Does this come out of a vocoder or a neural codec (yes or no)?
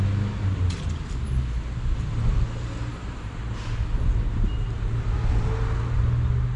no